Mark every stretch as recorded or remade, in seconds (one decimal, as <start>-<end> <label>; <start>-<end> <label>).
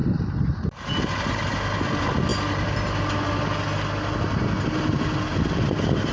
0.0-6.1 recorded